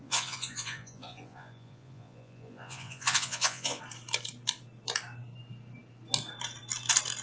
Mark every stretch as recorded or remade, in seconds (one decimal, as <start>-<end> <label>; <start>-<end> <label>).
0.0-3.8 remade; 3.8-7.2 recorded